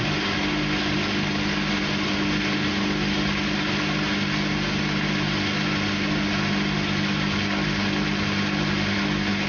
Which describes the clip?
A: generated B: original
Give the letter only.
B